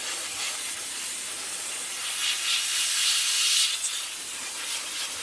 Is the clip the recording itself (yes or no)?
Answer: yes